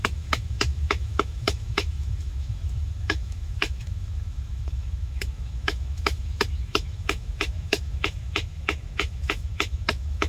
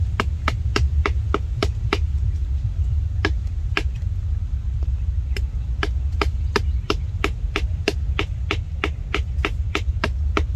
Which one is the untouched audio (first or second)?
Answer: second